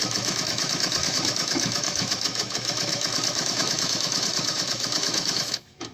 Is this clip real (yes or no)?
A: no